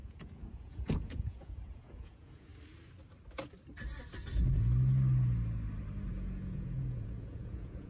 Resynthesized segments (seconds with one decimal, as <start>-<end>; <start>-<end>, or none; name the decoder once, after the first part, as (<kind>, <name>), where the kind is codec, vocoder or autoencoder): 0.0-2.5 (vocoder, Vocos); 6.1-7.9